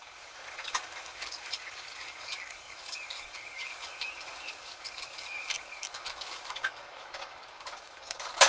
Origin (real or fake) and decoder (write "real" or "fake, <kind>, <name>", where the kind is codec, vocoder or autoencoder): fake, codec, DAC